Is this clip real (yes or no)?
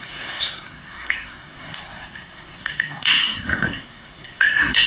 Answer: no